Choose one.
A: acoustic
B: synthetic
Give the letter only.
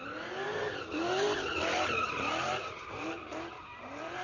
B